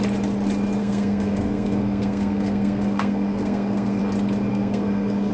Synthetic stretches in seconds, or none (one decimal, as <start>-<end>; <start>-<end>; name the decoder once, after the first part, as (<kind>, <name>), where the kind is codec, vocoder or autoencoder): 0.8-4.0 (codec, SNAC); 4.5-5.3